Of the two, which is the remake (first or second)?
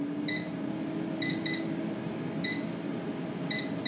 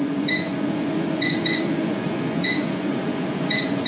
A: second